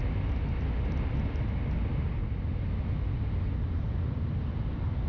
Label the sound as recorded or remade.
recorded